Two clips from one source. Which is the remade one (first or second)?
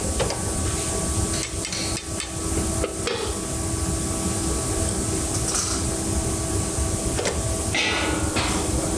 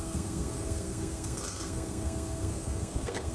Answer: second